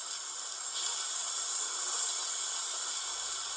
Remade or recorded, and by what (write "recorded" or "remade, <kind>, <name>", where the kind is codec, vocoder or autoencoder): recorded